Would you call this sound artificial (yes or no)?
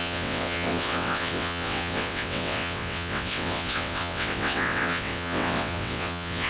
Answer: yes